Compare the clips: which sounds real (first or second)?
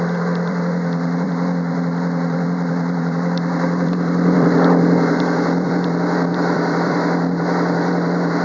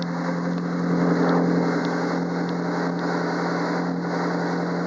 second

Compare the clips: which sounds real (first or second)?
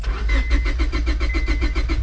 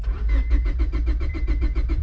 first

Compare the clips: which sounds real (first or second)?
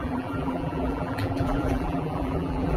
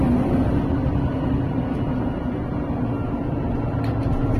second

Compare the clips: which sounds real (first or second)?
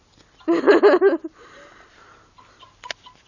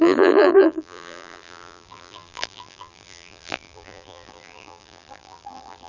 first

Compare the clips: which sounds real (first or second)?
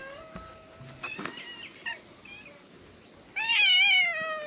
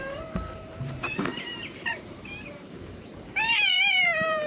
first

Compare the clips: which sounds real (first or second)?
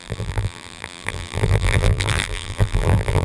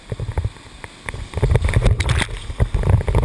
second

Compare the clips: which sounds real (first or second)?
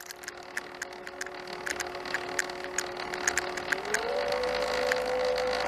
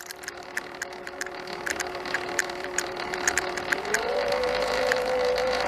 first